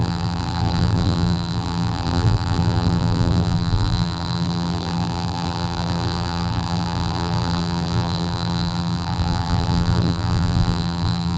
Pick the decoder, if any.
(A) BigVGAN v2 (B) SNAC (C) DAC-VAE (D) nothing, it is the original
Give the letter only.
A